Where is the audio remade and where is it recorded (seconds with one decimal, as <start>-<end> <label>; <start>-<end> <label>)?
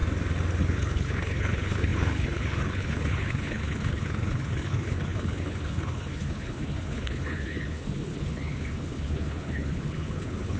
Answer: 0.0-0.6 recorded; 0.6-10.6 remade